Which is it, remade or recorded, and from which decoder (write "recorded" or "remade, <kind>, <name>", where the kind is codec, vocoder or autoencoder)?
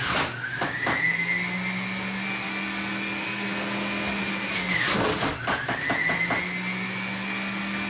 recorded